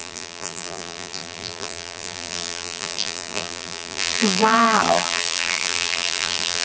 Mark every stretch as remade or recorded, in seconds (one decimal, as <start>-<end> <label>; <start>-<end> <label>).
0.0-6.6 remade